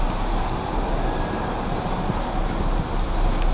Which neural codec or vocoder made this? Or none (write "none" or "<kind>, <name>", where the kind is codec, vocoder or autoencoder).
none